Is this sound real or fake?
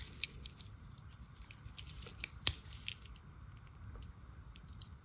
real